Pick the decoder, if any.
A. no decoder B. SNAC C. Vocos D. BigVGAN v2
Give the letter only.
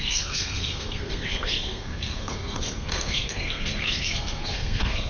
B